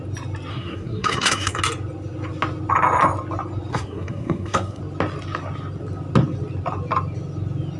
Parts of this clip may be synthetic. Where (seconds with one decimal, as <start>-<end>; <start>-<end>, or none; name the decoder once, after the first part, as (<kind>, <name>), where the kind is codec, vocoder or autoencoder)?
0.5-1.6 (codec, SNAC); 3.7-4.8